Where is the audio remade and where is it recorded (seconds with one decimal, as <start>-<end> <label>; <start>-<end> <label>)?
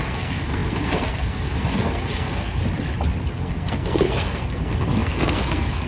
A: 0.0-2.6 remade; 2.6-3.3 recorded; 3.3-5.9 remade